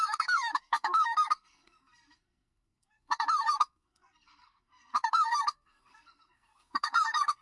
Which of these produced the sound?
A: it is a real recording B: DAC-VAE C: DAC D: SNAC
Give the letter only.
D